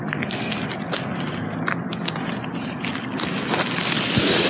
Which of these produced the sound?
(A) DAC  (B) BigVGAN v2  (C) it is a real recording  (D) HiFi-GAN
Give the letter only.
C